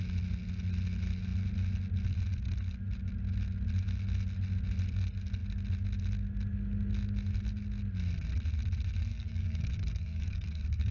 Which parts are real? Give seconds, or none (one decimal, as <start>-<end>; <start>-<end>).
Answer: 0.0-9.1